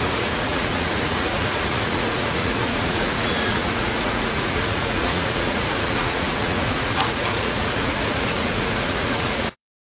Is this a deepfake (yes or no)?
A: yes